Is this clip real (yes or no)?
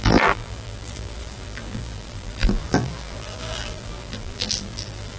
no